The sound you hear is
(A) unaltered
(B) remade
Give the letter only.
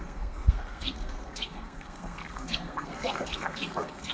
B